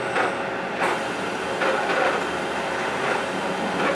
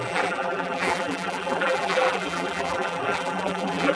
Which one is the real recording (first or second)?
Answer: first